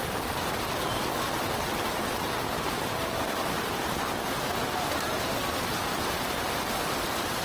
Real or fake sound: real